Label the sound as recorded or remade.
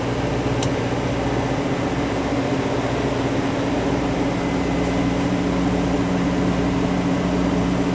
recorded